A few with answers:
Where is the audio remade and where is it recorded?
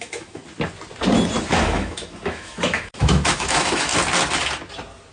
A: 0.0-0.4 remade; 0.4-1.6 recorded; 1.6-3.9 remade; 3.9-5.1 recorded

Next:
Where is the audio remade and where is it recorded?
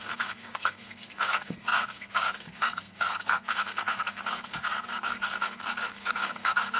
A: 0.0-6.8 remade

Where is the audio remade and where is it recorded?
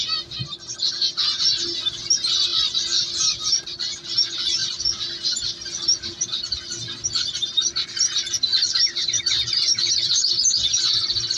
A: 0.0-2.5 recorded; 2.5-3.5 remade; 3.5-8.5 recorded; 8.5-9.2 remade; 9.2-11.4 recorded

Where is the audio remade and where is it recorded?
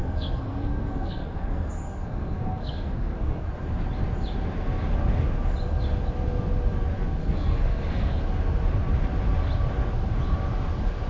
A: 0.0-3.5 remade; 3.5-7.2 recorded; 7.2-8.1 remade; 8.1-11.1 recorded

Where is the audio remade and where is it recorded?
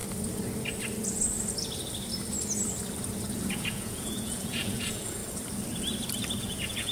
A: 0.0-3.3 recorded; 3.3-5.2 remade; 5.2-6.4 recorded; 6.4-6.9 remade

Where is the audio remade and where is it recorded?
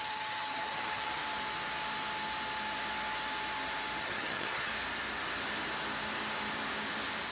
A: 0.0-1.2 remade; 1.2-4.0 recorded; 4.0-4.7 remade; 4.7-7.3 recorded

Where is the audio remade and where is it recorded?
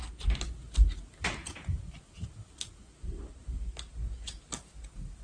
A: 0.0-1.4 recorded; 1.4-1.9 remade; 1.9-5.2 recorded